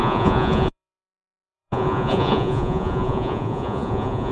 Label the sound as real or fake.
fake